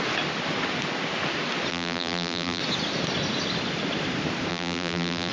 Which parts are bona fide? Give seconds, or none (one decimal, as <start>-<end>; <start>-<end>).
0.0-1.7; 2.6-4.5